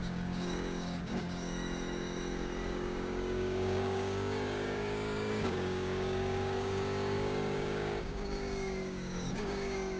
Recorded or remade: remade